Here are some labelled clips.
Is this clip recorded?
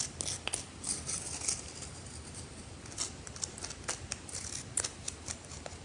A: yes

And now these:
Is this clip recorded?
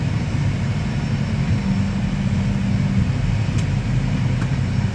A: yes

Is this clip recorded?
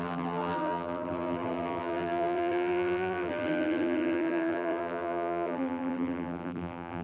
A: no